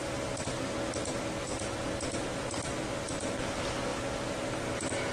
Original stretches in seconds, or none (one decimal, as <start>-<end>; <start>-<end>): 3.1-3.9